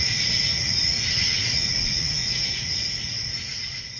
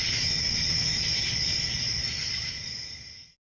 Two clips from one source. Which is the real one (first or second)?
second